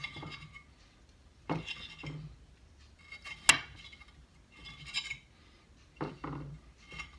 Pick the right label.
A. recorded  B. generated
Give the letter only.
A